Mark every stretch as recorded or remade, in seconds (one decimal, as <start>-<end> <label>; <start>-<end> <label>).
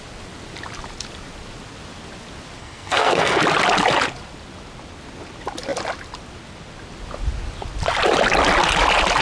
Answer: 0.0-2.6 recorded; 2.6-3.4 remade; 3.4-9.2 recorded